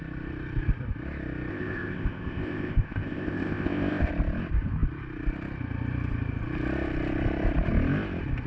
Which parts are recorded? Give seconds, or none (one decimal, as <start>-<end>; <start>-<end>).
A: 0.0-1.5; 4.1-8.5